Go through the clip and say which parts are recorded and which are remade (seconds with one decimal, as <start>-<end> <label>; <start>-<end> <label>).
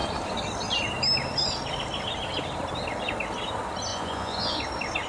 0.0-3.9 recorded; 3.9-4.6 remade; 4.6-5.1 recorded